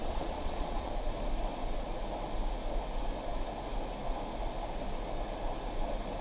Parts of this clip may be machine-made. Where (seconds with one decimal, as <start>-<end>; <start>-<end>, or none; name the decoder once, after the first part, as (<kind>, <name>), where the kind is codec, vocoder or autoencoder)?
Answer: 0.0-0.9 (vocoder, Vocos)